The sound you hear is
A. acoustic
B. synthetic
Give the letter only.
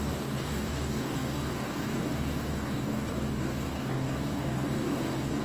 B